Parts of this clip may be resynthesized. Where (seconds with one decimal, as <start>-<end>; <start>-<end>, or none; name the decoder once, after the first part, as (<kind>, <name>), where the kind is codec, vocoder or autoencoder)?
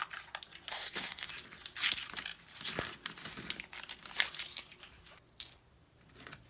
0.7-1.3 (codec, SNAC)